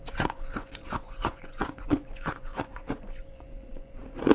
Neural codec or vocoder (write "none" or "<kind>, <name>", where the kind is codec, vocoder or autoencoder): vocoder, Vocos